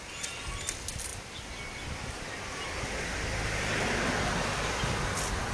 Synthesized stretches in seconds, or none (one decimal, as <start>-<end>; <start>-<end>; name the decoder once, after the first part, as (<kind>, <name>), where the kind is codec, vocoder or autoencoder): none